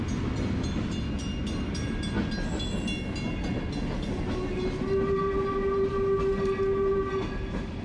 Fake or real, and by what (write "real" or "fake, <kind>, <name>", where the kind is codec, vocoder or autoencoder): real